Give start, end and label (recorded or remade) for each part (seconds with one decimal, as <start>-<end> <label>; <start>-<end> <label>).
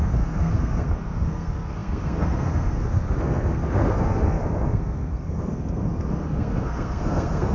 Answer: 0.0-7.5 remade